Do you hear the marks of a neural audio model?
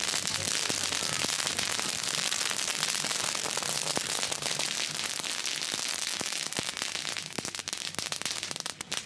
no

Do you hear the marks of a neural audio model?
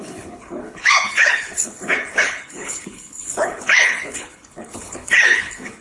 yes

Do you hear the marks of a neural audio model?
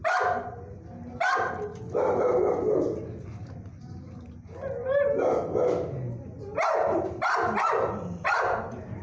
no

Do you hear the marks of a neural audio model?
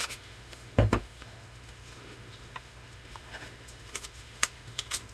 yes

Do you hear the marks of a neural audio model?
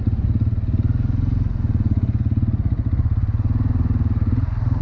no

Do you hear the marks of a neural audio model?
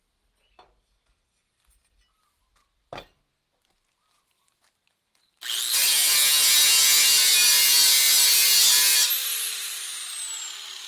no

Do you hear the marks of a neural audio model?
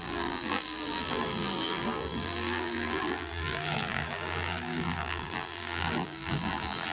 yes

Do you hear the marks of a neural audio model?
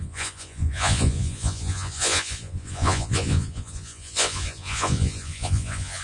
yes